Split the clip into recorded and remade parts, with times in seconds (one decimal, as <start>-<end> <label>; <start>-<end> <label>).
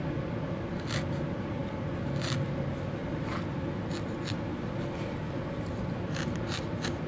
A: 0.0-7.1 recorded